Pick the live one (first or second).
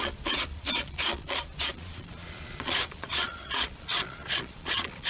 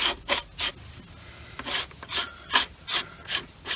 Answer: second